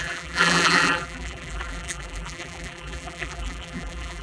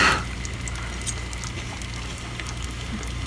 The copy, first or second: first